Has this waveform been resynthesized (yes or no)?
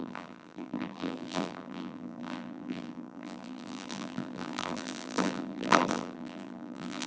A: yes